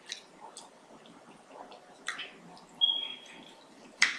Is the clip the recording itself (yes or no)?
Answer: yes